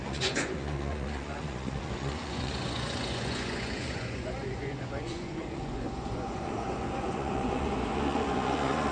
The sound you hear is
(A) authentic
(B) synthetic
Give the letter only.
B